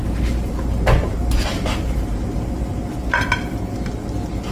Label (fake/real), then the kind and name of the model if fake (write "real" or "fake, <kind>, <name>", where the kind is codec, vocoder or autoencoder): real